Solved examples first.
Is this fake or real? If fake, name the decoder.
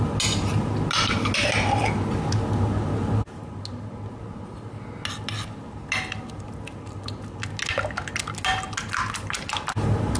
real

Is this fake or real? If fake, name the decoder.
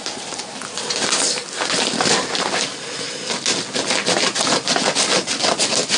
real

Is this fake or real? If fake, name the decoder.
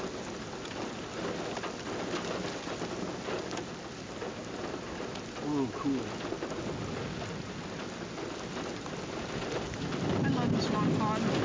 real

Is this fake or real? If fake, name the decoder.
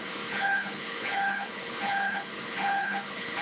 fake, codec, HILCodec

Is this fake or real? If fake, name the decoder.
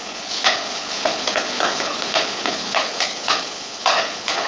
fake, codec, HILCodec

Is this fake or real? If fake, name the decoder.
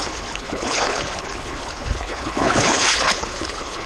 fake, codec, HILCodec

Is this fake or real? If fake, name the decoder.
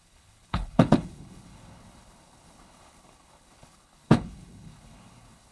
fake, codec, HILCodec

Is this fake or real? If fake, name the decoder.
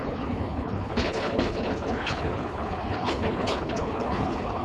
fake, codec, HILCodec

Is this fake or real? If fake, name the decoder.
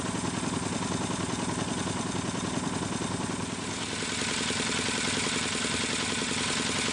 real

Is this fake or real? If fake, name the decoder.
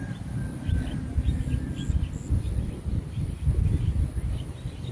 real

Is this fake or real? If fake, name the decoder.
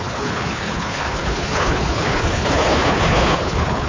fake, codec, HILCodec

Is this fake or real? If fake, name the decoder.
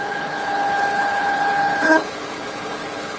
fake, codec, HILCodec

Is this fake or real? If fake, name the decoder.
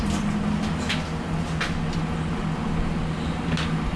real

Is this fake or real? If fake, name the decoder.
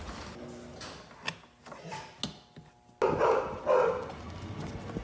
real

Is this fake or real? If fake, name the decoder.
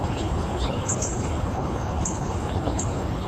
fake, codec, HILCodec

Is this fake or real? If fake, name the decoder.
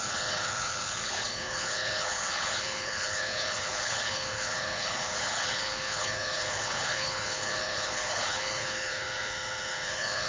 fake, codec, HILCodec